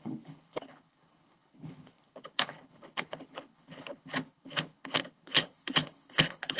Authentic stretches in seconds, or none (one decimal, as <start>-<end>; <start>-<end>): none